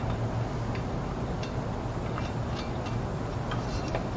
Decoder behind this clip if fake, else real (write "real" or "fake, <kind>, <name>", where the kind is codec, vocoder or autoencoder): real